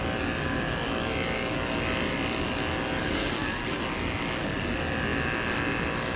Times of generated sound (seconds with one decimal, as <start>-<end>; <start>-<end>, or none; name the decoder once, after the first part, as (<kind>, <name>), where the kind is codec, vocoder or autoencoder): 3.0-3.8 (codec, SNAC)